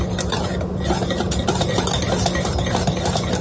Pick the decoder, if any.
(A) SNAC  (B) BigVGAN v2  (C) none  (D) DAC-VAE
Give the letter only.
C